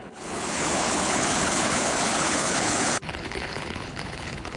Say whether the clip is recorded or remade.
remade